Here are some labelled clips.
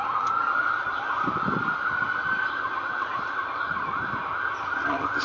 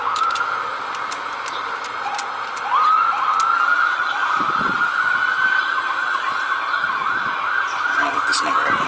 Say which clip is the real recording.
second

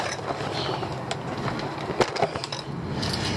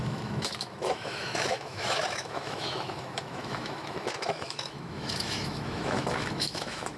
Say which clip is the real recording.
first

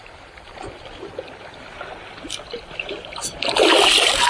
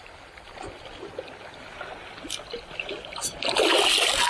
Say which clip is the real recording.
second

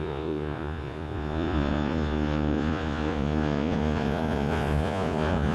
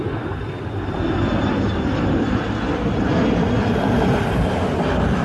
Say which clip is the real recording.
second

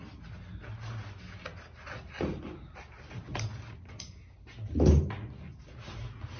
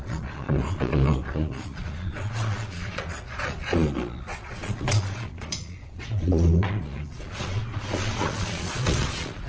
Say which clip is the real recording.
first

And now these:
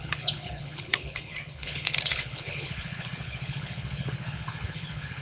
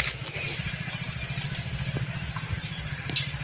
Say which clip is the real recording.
second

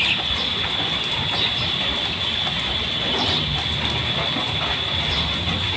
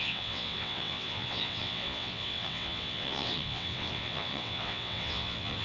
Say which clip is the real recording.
first